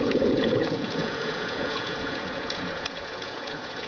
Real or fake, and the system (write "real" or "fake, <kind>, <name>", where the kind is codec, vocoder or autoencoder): fake, vocoder, Vocos